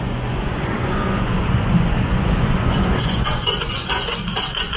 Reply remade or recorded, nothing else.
remade